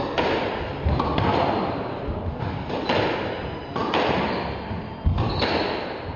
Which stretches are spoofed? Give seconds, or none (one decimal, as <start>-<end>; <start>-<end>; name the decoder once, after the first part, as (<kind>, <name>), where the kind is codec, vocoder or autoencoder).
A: none